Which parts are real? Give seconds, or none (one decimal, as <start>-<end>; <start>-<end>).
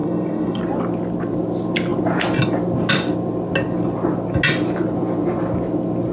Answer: 0.6-6.1